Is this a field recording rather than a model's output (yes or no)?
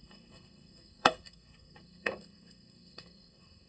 no